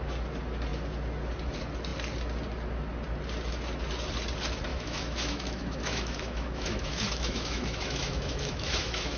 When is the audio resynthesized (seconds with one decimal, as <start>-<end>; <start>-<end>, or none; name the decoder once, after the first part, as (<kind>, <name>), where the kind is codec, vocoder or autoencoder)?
4.7-9.2 (autoencoder, DAC-VAE)